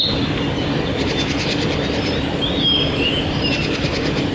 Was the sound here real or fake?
real